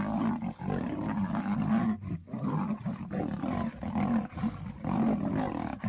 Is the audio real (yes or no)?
yes